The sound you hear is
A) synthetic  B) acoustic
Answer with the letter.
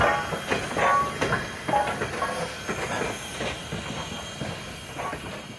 B